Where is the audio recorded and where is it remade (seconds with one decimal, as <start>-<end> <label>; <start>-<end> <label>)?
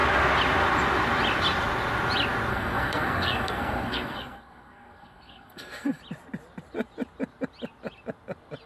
0.0-2.5 recorded; 2.5-6.0 remade; 6.0-8.7 recorded